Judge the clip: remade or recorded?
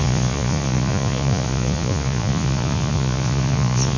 remade